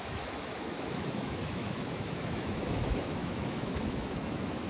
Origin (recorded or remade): remade